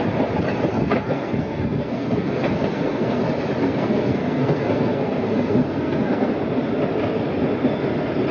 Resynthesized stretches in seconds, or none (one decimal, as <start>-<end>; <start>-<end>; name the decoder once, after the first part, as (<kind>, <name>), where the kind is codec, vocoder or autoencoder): 0.7-3.2 (codec, SNAC); 3.6-6.3

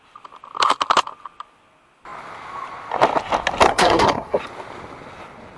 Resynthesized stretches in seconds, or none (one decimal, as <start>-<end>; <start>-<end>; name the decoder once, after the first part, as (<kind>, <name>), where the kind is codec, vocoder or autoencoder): 3.7-4.4 (codec, SNAC)

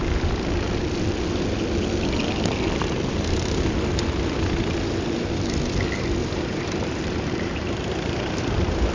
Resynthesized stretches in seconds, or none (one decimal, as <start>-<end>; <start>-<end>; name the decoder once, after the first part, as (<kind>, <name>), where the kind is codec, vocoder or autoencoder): 6.2-8.9 (vocoder, BigVGAN v2)

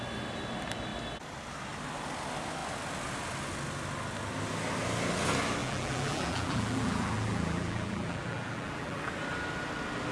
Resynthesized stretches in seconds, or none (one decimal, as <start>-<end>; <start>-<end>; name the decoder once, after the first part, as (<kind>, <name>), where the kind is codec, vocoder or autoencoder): 5.6-9.0 (vocoder, BigVGAN v2)

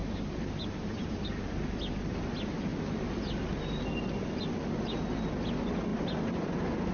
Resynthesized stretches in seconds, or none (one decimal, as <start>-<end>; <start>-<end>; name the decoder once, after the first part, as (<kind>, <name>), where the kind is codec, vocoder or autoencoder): 0.0-1.9 (vocoder, BigVGAN v2); 2.7-3.8

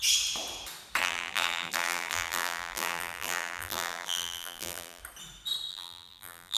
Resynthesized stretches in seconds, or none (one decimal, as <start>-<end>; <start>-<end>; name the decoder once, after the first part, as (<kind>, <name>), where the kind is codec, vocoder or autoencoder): 1.0-5.0 (vocoder, BigVGAN v2); 5.7-6.6

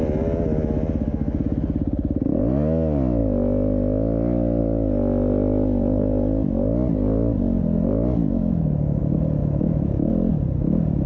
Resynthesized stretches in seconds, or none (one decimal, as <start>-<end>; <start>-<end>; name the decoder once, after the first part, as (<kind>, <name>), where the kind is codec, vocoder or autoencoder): 8.2-9.0 (autoencoder, DAC-VAE); 9.4-10.1

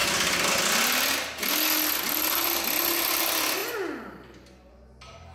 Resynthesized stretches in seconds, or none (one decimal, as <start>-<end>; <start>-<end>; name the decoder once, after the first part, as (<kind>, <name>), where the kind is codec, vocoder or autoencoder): none